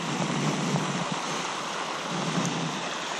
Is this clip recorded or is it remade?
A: recorded